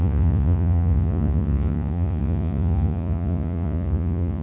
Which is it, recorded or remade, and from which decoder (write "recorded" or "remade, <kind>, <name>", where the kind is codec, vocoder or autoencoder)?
remade, vocoder, Vocos